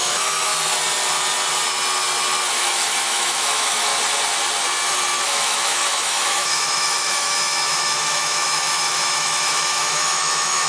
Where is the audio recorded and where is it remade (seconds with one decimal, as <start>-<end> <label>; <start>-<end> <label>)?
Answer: 0.0-0.5 remade; 0.5-2.5 recorded; 2.5-3.9 remade; 3.9-5.2 recorded; 5.2-10.7 remade